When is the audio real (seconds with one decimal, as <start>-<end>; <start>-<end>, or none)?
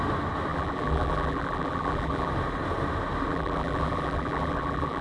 0.0-0.5; 2.3-3.3